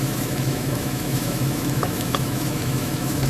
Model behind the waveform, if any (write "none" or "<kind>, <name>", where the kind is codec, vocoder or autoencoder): autoencoder, DAC-VAE